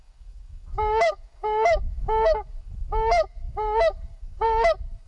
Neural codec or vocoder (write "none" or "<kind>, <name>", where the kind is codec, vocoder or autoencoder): codec, DAC